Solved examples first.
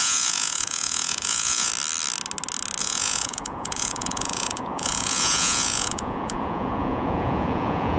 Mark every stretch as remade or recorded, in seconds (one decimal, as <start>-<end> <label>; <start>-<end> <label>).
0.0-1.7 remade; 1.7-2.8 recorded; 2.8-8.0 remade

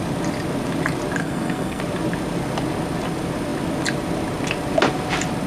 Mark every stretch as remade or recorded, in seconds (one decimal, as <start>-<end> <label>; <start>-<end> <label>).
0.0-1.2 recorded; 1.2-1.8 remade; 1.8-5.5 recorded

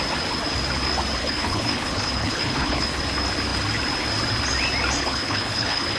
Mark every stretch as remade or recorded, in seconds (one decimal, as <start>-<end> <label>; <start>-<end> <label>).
0.0-1.2 recorded; 1.2-3.0 remade; 3.0-5.0 recorded; 5.0-6.0 remade

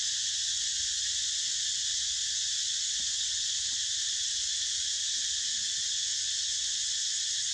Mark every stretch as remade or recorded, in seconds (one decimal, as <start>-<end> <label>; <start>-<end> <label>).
0.0-2.6 remade; 2.6-5.6 recorded; 5.6-7.5 remade

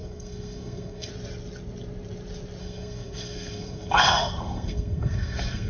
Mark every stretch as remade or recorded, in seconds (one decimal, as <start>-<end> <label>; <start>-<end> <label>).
0.0-1.1 remade; 1.1-2.6 recorded; 2.6-5.7 remade

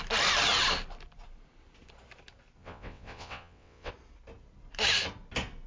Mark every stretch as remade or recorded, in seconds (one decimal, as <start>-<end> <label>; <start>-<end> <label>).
0.0-2.6 recorded; 2.6-3.9 remade; 3.9-5.7 recorded

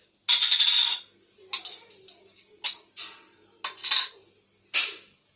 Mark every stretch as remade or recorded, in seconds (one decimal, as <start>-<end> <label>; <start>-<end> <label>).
0.0-5.4 recorded

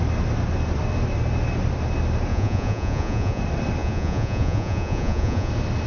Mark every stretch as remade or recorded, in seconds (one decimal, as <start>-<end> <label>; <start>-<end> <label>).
0.0-2.3 recorded; 2.3-3.4 remade; 3.4-3.8 recorded; 3.8-5.5 remade; 5.5-5.9 recorded